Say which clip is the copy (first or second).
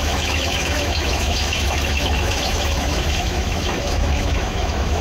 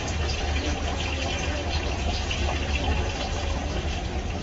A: first